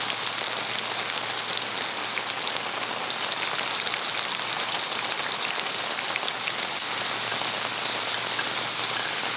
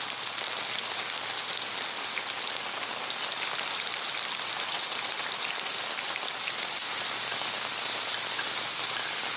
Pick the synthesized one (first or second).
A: second